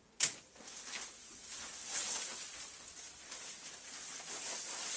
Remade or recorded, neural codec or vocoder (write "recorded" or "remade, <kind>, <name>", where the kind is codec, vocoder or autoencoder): recorded